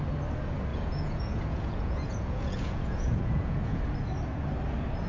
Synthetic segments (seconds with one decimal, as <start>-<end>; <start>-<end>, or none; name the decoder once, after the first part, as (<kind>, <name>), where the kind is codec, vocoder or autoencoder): 0.7-3.8 (vocoder, Vocos)